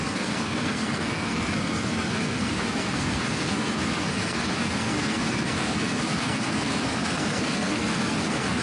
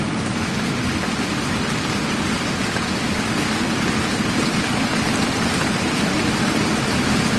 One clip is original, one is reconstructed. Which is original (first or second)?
second